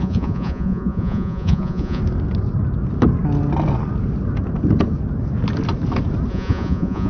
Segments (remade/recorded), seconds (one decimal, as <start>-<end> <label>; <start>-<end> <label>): 0.0-2.0 remade; 2.0-6.3 recorded; 6.3-7.1 remade